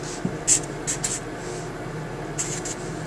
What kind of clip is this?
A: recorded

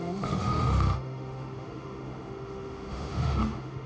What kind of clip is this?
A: remade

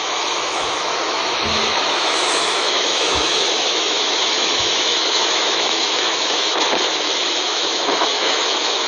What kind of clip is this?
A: remade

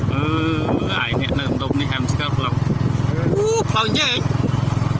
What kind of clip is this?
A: recorded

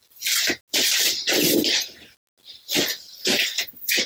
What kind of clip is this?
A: recorded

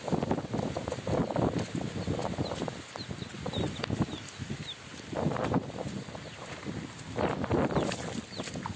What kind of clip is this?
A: recorded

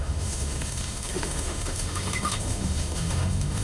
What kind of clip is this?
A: remade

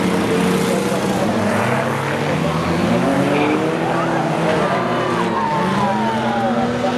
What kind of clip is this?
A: recorded